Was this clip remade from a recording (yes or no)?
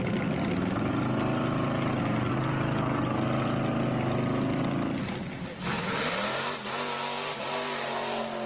no